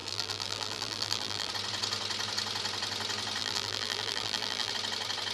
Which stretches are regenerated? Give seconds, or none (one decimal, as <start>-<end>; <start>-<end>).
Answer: 0.0-1.5; 3.4-4.7